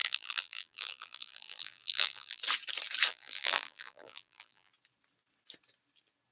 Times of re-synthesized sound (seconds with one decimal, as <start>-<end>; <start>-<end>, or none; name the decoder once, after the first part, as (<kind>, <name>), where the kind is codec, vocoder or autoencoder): 0.0-2.4 (vocoder, BigVGAN v2); 3.1-4.7